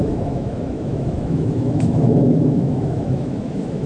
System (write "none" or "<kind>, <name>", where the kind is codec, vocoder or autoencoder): autoencoder, DAC-VAE